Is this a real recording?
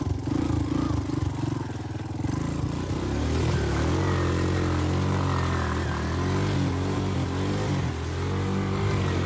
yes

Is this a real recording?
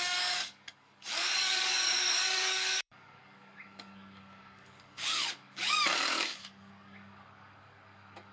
no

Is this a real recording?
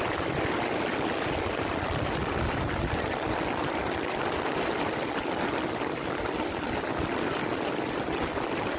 yes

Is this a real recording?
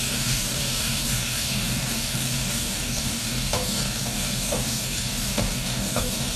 no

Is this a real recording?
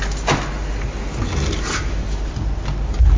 yes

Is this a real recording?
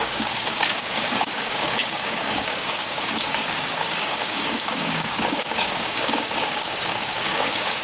no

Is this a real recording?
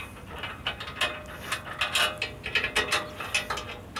yes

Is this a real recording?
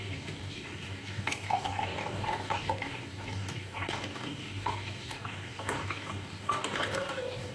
no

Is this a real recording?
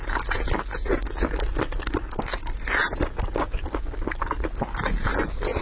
yes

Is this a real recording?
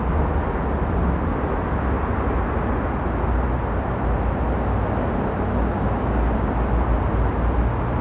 yes